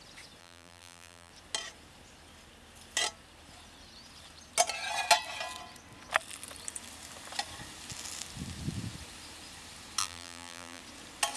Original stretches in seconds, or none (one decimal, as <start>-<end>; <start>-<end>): 0.0-0.4; 1.3-10.0; 10.8-11.4